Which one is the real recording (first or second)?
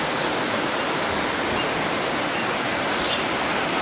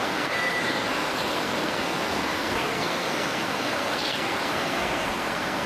first